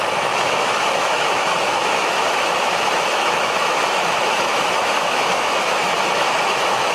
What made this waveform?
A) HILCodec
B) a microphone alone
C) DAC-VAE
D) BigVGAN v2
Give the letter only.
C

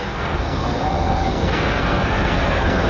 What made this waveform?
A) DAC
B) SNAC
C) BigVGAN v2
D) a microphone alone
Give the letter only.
B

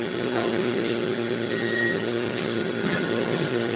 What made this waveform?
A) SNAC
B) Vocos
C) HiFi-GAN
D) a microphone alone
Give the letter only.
C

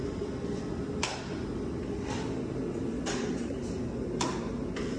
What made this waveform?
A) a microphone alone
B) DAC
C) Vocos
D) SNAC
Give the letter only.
A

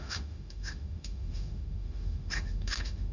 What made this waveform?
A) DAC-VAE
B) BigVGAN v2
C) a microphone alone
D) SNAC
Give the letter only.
A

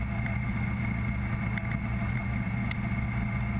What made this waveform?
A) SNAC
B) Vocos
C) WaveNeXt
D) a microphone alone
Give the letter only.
D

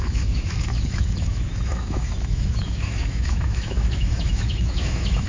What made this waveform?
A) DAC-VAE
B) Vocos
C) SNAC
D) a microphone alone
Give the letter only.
A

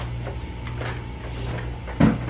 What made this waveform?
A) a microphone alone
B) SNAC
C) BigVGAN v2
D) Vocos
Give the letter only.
A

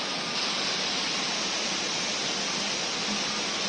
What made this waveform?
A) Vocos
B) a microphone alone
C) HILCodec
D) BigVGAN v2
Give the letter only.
B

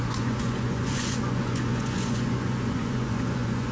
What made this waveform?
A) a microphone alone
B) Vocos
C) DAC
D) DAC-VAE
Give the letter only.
B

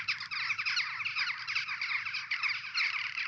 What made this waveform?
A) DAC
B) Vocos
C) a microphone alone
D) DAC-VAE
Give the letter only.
C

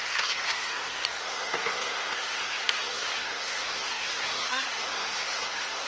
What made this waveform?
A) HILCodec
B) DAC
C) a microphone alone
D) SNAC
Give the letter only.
D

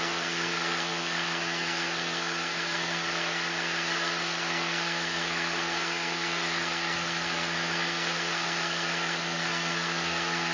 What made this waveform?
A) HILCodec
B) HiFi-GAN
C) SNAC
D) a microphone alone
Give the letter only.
C